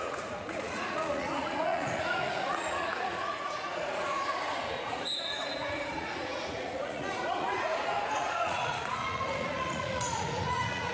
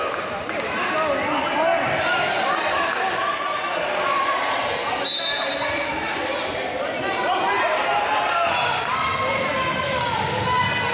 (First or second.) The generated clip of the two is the first